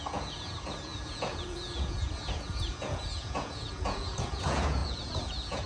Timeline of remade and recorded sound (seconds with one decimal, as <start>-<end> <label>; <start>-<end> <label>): 0.0-5.7 remade

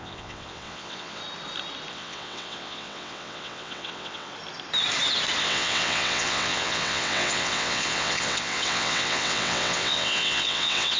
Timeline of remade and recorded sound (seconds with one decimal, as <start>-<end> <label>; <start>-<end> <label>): 0.0-1.2 remade; 1.2-1.9 recorded; 1.9-4.3 remade; 4.3-5.4 recorded; 5.4-11.0 remade

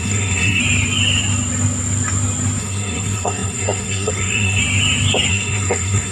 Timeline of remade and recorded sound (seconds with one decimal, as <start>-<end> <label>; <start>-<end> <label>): 0.0-0.6 remade; 0.6-2.6 recorded; 2.6-4.6 remade; 4.6-5.3 recorded; 5.3-6.1 remade